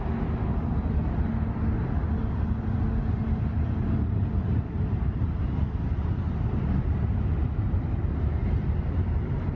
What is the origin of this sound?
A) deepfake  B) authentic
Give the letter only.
B